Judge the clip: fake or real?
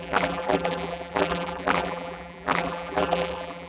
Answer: fake